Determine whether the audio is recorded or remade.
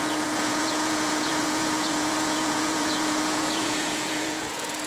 remade